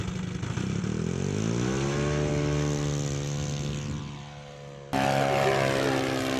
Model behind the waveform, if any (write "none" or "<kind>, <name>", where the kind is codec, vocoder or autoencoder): none